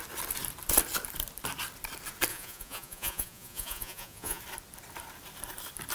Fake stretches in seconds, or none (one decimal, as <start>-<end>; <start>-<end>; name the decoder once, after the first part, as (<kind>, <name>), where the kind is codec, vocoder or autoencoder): 2.3-4.4 (vocoder, Vocos)